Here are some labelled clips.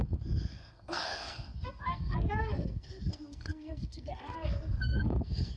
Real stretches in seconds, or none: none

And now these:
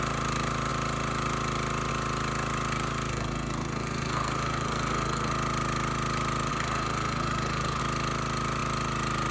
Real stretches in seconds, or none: 0.0-3.1; 5.3-6.5; 7.8-9.3